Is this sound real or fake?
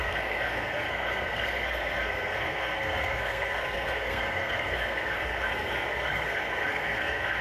fake